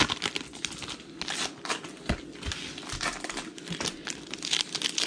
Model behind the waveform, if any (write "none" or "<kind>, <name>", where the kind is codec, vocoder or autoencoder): none